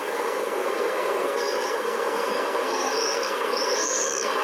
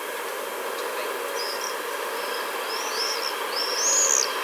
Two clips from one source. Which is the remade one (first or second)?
first